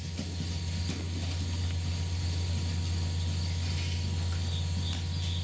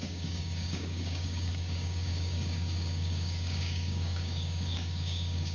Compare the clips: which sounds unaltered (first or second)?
first